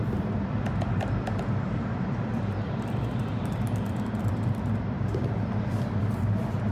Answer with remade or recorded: remade